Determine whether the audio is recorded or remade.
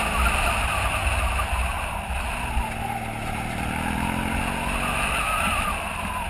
recorded